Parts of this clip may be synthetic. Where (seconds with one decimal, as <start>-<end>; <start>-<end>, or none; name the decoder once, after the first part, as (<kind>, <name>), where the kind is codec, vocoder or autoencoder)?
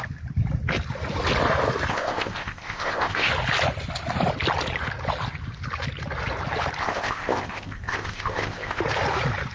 1.9-3.3 (codec, ZipCodec); 6.8-8.8